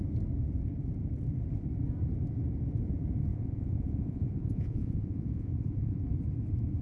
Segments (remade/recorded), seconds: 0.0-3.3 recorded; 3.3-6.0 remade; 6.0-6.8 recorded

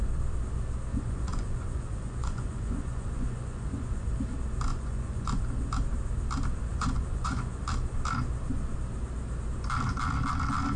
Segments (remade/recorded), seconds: 0.0-0.9 recorded; 0.9-4.1 remade; 4.1-4.7 recorded; 4.7-5.4 remade; 5.4-6.7 recorded; 6.7-7.6 remade; 7.6-10.8 recorded

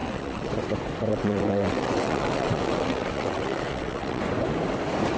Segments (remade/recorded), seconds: 0.0-0.5 remade; 0.5-1.1 recorded; 1.1-4.2 remade; 4.2-5.2 recorded

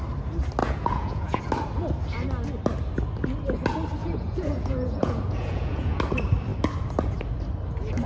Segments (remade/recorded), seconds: 0.0-0.6 recorded; 0.6-1.4 remade; 1.4-4.0 recorded; 4.0-6.0 remade; 6.0-8.1 recorded

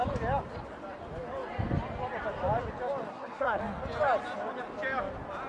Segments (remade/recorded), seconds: 0.0-3.1 recorded; 3.1-3.6 remade; 3.6-5.5 recorded